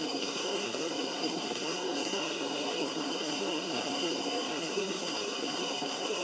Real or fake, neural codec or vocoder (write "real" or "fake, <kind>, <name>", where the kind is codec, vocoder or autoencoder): fake, codec, SNAC